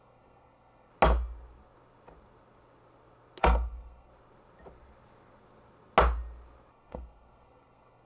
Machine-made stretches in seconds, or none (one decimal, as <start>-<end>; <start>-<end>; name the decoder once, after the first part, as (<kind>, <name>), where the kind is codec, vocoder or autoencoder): 0.0-0.9 (codec, SNAC); 3.4-4.1; 6.7-8.1